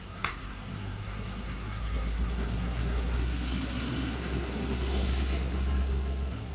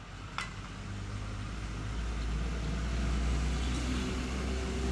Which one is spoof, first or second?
first